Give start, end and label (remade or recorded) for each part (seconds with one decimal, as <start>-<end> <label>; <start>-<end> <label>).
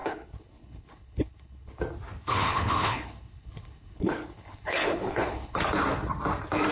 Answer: 0.0-1.8 remade; 1.8-2.2 recorded; 2.2-5.6 remade; 5.6-6.7 recorded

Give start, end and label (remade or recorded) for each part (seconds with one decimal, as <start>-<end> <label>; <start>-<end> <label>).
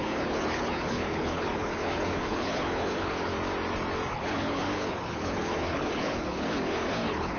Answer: 0.0-3.3 remade; 3.3-4.1 recorded; 4.1-7.4 remade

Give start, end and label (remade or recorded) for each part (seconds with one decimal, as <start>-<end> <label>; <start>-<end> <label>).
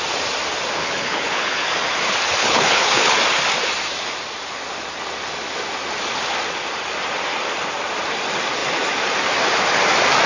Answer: 0.0-0.8 recorded; 0.8-1.7 remade; 1.7-2.4 recorded; 2.4-3.2 remade; 3.2-10.3 recorded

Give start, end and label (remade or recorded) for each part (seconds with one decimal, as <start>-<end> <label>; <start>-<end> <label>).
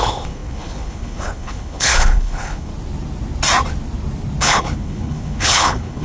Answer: 0.0-2.7 remade; 2.7-4.4 recorded; 4.4-6.0 remade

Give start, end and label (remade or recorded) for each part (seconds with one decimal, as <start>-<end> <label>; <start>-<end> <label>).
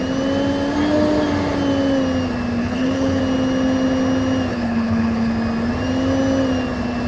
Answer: 0.0-2.6 recorded; 2.6-3.2 remade; 3.2-4.5 recorded; 4.5-5.3 remade; 5.3-7.1 recorded